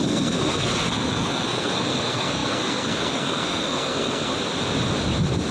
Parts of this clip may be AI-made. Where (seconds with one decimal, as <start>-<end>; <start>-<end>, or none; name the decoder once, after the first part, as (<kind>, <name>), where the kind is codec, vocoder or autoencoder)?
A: 0.0-4.3 (codec, SNAC)